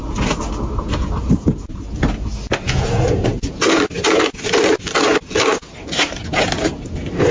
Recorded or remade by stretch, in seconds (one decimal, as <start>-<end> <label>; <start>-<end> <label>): 0.0-7.3 recorded